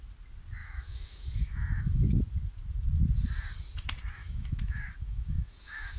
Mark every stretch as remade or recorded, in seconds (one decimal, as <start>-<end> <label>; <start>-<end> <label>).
0.0-0.6 recorded; 0.6-2.2 remade; 2.2-4.2 recorded; 4.2-6.0 remade